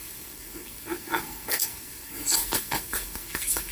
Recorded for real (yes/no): no